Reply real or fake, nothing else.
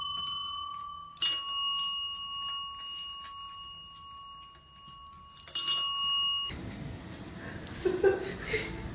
real